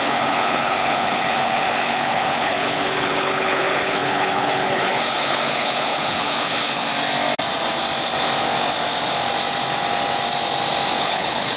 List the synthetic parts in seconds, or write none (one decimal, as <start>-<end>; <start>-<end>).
0.0-6.9; 11.0-11.6